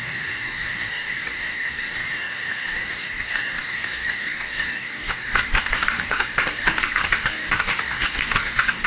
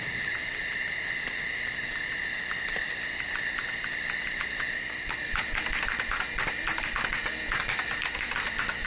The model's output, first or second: first